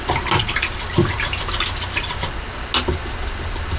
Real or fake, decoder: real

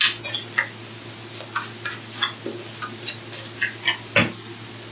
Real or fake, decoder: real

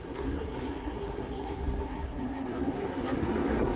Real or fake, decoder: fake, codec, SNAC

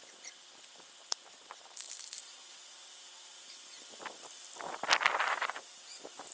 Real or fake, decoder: real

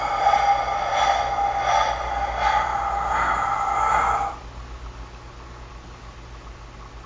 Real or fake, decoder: real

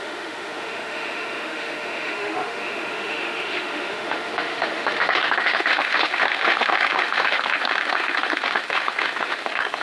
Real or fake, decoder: fake, autoencoder, DAC-VAE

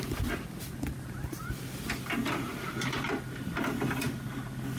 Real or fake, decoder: real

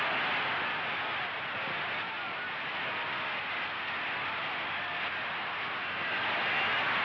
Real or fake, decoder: real